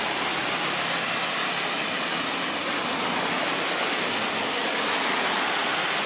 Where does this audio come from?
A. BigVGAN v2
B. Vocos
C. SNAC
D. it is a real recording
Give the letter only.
D